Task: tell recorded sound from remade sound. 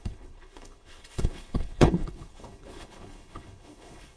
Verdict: remade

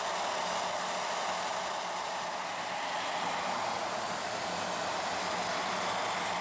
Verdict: recorded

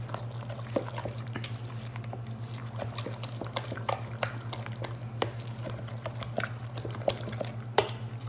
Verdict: recorded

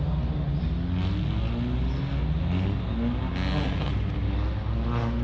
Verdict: recorded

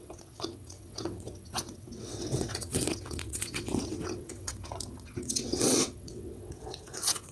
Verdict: remade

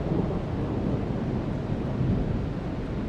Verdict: recorded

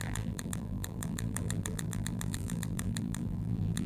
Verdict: remade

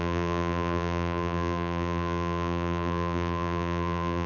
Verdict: remade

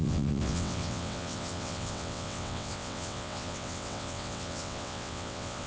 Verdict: remade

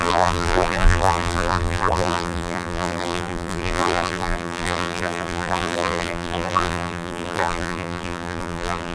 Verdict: remade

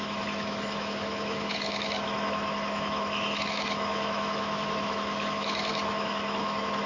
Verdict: remade